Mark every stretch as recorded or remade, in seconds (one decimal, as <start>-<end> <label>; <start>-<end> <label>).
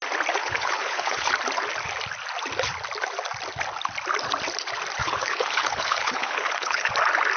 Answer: 0.0-0.4 recorded; 0.4-1.3 remade; 1.3-5.0 recorded; 5.0-6.9 remade; 6.9-7.4 recorded